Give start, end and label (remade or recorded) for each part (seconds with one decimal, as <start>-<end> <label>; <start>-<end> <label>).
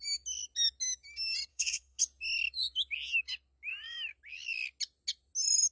0.0-1.5 recorded; 1.5-2.0 remade; 2.0-5.7 recorded